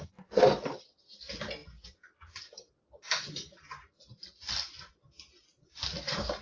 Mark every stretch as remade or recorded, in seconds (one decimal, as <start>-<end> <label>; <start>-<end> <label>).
0.0-6.4 recorded